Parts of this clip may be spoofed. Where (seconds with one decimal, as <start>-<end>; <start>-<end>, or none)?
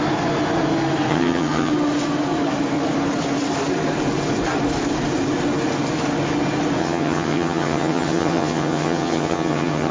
1.1-1.7; 6.8-9.9